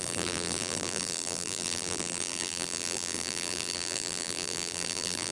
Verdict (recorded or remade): remade